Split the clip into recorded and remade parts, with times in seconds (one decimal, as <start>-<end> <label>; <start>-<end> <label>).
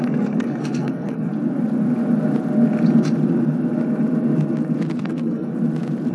0.0-1.3 remade; 1.3-5.0 recorded; 5.0-5.5 remade; 5.5-6.1 recorded